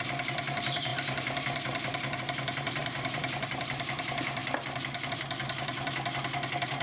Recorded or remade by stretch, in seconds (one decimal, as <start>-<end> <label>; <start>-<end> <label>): 0.0-4.4 remade; 4.4-5.1 recorded; 5.1-6.8 remade